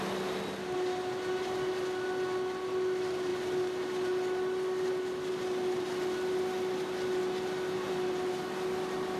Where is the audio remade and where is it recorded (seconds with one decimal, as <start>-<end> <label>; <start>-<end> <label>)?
0.0-9.2 recorded